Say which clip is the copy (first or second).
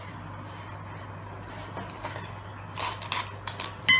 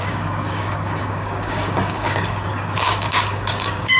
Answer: second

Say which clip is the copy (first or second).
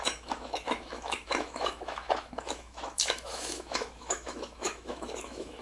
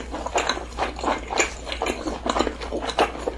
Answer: first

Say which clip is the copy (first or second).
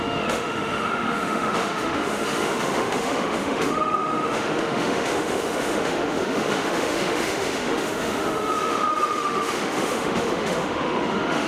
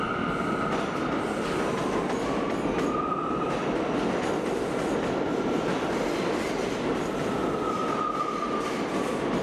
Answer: first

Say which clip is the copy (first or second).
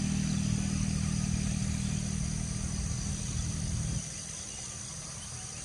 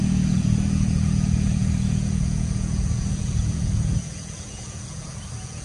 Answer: second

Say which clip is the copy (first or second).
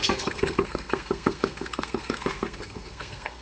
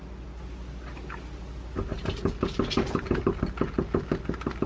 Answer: first